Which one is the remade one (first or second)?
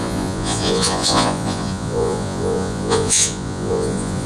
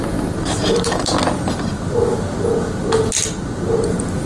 first